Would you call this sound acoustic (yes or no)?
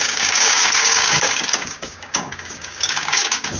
no